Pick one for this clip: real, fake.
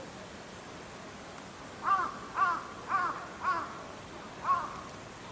real